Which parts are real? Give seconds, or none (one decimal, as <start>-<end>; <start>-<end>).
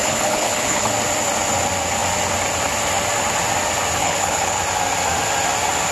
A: 0.9-4.0; 4.6-5.9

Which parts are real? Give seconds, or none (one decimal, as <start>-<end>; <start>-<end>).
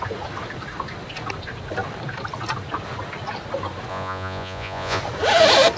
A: 0.0-3.9; 5.0-5.8